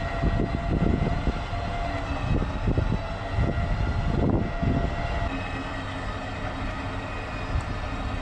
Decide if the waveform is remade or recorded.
recorded